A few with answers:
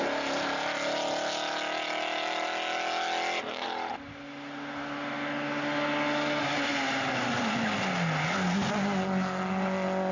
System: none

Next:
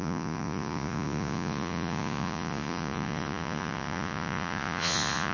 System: vocoder, Vocos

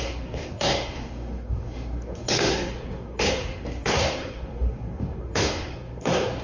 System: codec, SNAC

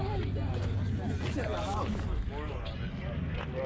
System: none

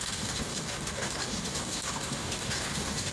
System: codec, DAC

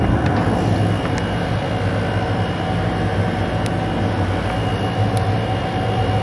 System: none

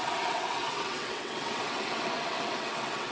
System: vocoder, WaveNeXt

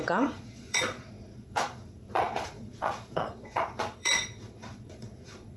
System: vocoder, Vocos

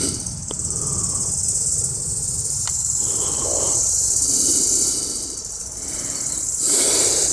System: vocoder, BigVGAN v2